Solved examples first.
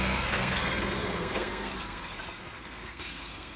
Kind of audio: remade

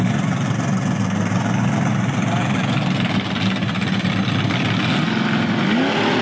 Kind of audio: recorded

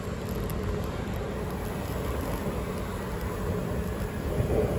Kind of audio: recorded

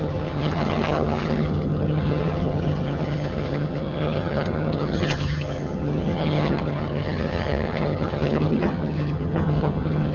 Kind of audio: remade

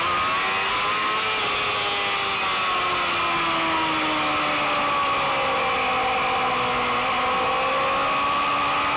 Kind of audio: recorded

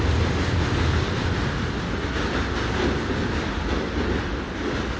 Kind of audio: recorded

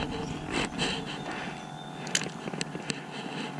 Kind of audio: recorded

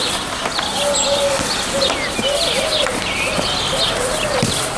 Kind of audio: recorded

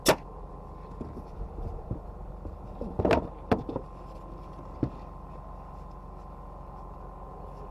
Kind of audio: recorded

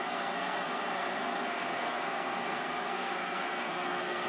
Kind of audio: remade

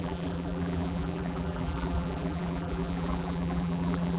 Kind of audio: remade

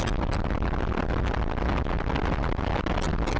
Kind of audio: recorded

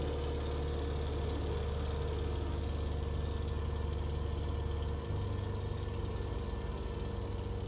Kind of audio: recorded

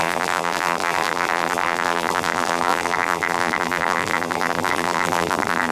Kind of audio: remade